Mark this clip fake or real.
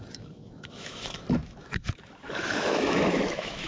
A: fake